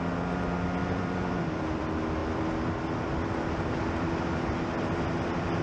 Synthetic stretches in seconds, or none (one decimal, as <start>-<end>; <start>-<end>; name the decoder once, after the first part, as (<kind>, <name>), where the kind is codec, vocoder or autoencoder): 0.8-1.8 (vocoder, BigVGAN v2); 2.2-5.6